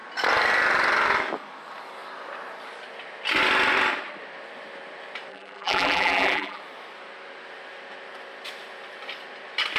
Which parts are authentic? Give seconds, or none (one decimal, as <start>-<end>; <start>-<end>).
0.0-5.3; 6.6-9.8